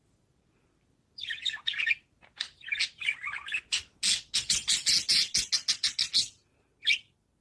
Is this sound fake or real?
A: real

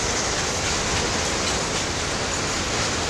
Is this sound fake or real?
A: real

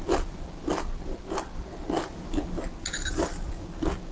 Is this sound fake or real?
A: real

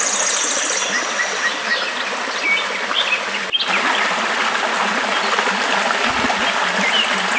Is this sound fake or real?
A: real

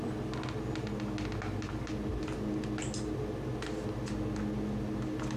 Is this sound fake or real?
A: real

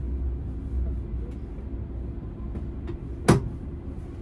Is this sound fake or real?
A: real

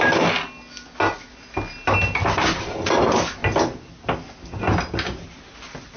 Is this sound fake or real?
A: real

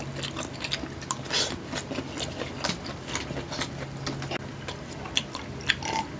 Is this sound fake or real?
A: real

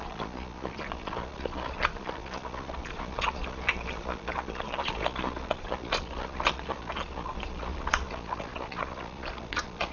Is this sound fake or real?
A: fake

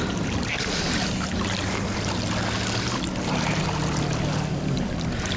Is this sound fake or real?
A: real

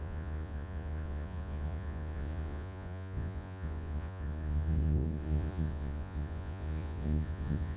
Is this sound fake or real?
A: fake